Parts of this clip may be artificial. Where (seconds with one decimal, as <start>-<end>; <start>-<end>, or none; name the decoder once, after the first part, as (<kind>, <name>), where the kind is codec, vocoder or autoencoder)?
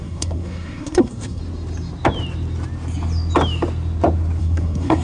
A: 0.0-1.4 (codec, SNAC); 4.4-5.0